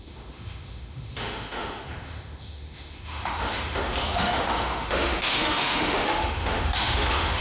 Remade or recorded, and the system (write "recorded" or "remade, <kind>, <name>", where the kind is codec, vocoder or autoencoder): remade, autoencoder, DAC-VAE